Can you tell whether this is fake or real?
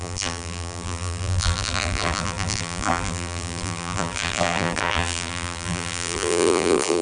fake